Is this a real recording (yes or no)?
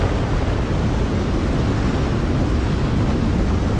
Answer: yes